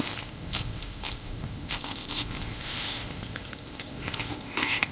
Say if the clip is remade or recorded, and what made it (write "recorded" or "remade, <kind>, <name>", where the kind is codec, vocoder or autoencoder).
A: remade, codec, ZipCodec